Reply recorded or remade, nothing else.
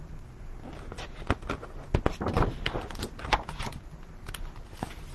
recorded